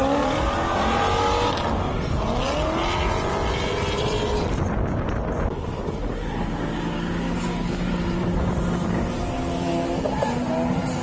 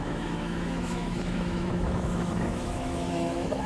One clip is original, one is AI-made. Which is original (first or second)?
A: first